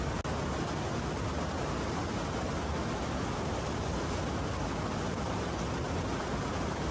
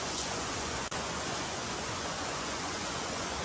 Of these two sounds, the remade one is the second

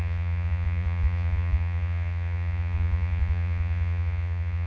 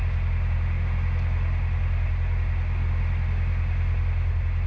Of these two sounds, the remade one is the first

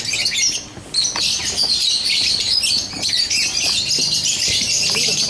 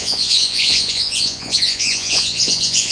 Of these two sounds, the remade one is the second